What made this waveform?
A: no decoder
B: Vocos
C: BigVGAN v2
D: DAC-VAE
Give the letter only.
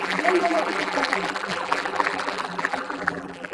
C